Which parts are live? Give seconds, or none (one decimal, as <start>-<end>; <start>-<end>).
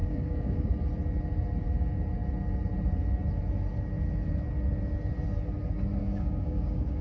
0.7-6.0